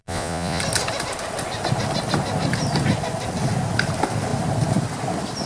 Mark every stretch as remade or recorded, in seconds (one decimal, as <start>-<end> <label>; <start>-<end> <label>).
0.0-0.6 remade; 0.6-5.5 recorded